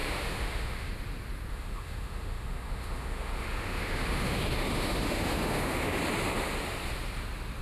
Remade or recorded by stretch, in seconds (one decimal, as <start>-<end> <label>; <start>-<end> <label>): 0.0-0.9 remade; 0.9-1.5 recorded; 1.5-6.0 remade; 6.0-7.6 recorded